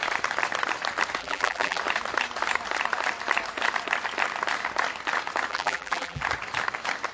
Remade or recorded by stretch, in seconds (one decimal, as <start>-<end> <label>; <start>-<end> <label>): 0.0-1.2 recorded; 1.2-1.8 remade; 1.8-5.5 recorded; 5.5-6.2 remade; 6.2-7.1 recorded

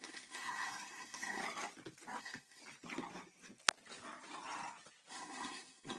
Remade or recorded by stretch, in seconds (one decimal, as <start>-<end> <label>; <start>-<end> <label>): 0.0-1.4 remade; 1.4-2.2 recorded; 2.2-2.6 remade; 2.6-5.1 recorded; 5.1-6.0 remade

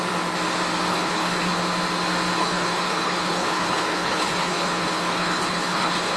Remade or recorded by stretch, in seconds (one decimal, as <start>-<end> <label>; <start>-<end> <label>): 0.0-0.9 recorded; 0.9-1.6 remade; 1.6-2.4 recorded; 2.4-6.2 remade

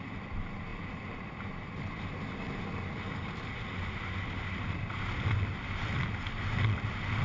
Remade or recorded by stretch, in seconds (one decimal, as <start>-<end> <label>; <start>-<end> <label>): 0.0-7.2 recorded

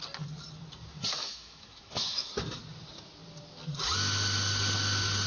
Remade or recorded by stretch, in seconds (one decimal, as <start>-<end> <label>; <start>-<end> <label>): 0.0-1.2 recorded; 1.2-2.3 remade; 2.3-5.3 recorded

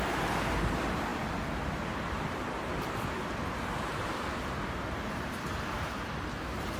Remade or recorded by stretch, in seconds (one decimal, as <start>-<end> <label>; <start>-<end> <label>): 0.0-6.8 remade